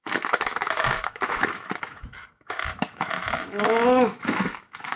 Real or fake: fake